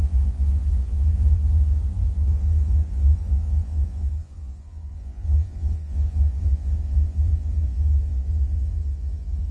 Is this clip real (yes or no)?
no